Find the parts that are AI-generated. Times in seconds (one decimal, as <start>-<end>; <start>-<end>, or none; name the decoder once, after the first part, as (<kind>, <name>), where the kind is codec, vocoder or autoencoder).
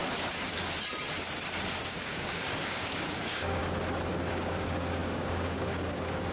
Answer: 1.8-3.6 (codec, DAC); 4.3-6.3